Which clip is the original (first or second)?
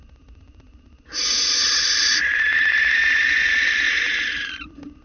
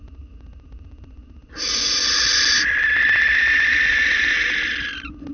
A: second